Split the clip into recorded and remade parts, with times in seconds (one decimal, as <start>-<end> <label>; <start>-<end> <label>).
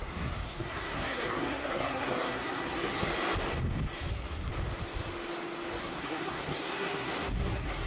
0.0-3.1 remade; 3.1-4.1 recorded; 4.1-4.5 remade; 4.5-5.8 recorded; 5.8-7.9 remade